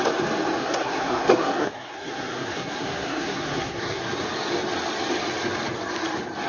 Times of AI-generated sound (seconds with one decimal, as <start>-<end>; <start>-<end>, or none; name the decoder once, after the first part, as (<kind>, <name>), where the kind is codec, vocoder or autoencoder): 0.6-4.0 (codec, SNAC)